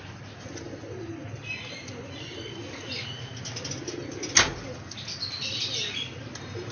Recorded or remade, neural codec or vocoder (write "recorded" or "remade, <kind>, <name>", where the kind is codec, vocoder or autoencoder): recorded